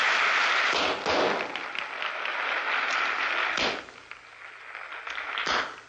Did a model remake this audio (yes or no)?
no